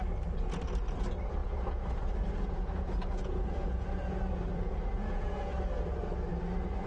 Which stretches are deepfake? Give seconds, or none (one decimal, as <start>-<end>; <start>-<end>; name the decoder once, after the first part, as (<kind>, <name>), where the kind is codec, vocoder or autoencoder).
1.4-5.5 (vocoder, Vocos)